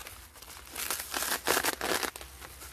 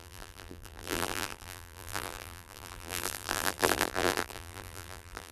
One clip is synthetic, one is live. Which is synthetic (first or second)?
second